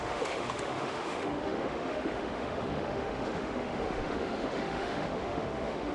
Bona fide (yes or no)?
no